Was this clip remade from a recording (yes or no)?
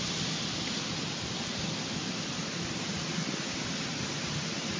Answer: no